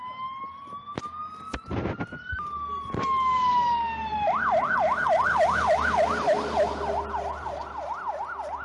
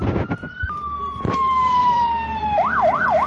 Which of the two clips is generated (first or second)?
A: second